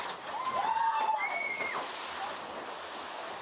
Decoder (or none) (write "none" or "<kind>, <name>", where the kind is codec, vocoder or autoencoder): none